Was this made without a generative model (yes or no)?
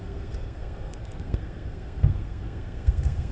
no